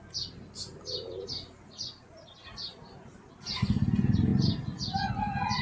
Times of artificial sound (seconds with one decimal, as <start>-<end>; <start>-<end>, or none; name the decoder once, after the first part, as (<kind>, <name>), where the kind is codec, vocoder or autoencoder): none